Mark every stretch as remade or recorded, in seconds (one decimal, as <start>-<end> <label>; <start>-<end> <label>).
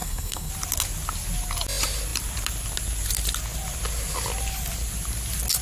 0.0-0.5 remade; 0.5-5.6 recorded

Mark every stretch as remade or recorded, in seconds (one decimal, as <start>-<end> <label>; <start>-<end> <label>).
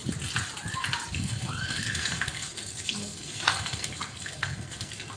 0.0-1.1 recorded; 1.1-5.2 remade